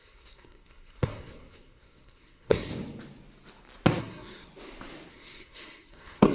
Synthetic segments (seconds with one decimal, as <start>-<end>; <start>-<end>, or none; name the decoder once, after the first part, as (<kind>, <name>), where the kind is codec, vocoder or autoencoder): 0.0-2.7 (codec, SNAC); 4.0-4.5; 5.1-6.3